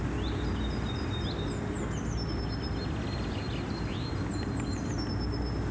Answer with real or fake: real